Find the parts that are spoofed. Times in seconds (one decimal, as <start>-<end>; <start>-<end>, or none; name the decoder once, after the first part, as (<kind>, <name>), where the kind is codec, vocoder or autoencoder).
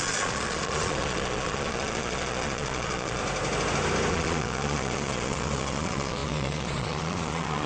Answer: 0.0-3.2 (vocoder, Vocos); 4.1-7.7